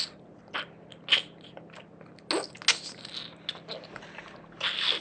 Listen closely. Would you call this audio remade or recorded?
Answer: recorded